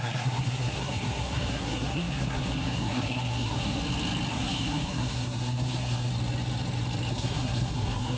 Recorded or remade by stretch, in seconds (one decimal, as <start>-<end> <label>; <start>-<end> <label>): 0.0-3.8 remade; 3.8-4.3 recorded; 4.3-6.1 remade; 6.1-7.1 recorded; 7.1-8.2 remade